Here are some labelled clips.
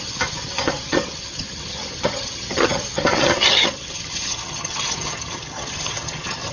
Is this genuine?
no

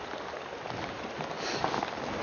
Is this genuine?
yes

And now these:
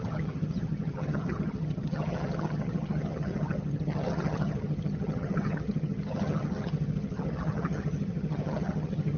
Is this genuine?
no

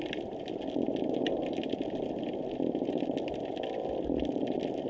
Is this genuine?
yes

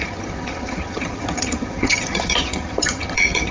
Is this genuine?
no